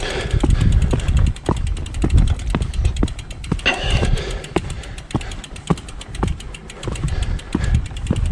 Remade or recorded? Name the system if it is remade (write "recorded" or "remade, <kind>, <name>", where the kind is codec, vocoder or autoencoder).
recorded